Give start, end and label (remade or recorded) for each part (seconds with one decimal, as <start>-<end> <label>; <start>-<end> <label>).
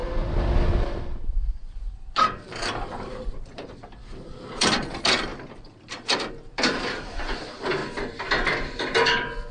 0.0-0.8 recorded; 0.8-5.3 remade; 5.3-6.3 recorded; 6.3-7.8 remade; 7.8-9.5 recorded